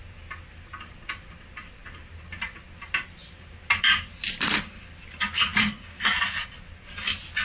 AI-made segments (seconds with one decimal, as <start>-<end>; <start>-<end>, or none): 1.8-2.6; 3.2-4.6